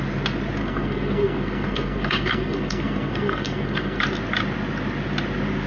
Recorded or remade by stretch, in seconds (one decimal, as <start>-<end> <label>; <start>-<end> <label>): 0.0-0.6 recorded; 0.6-4.0 remade; 4.0-5.7 recorded